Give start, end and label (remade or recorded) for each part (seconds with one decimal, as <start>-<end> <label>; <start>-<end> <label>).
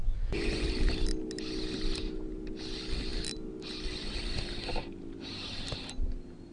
0.0-0.7 remade; 0.7-6.5 recorded